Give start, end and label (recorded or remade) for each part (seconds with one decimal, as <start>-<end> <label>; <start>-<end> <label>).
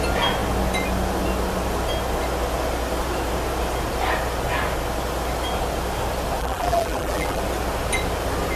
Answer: 0.0-6.4 recorded; 6.4-7.4 remade; 7.4-8.6 recorded